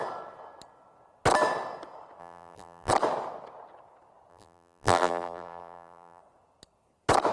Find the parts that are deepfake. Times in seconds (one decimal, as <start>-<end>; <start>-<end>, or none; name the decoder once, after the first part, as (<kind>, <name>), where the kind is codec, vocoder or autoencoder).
2.2-2.9 (vocoder, BigVGAN v2); 4.3-6.2